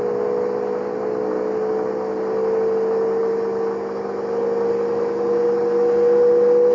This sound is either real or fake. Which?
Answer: real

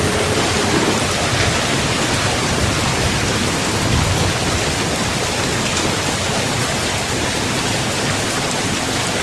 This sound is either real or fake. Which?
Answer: real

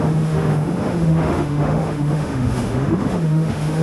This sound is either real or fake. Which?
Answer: fake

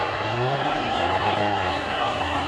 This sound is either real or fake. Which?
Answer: fake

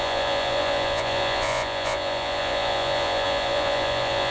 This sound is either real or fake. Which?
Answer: fake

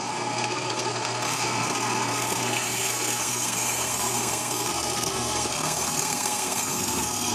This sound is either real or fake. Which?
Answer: fake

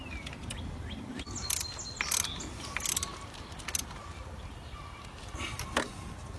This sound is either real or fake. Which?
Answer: real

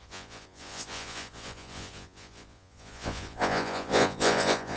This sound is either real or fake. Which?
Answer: fake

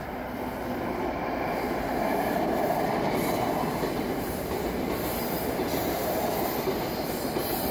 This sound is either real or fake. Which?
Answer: fake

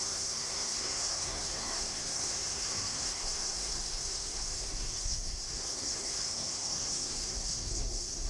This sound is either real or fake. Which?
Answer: fake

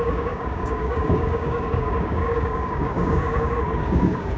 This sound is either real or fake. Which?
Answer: fake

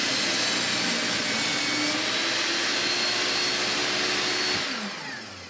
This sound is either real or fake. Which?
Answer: real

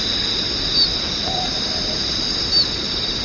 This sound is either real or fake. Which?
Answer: real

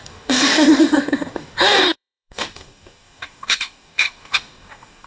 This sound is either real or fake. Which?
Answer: fake